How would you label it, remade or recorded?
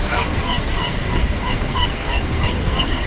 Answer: remade